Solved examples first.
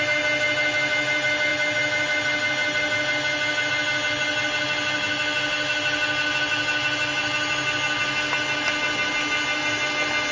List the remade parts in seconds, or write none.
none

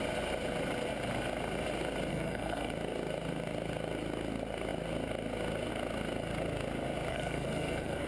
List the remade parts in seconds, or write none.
2.1-2.7 (codec, SNAC); 7.1-8.1

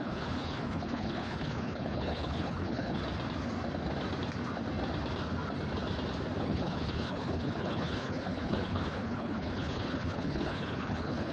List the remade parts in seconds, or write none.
0.0-3.0 (codec, HILCodec); 6.4-11.3

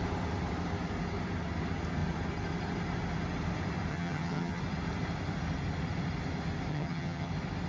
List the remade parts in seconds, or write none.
3.9-4.6 (vocoder, HiFi-GAN); 6.7-7.3

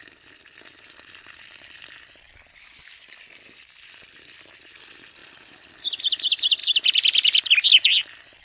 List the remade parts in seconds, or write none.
none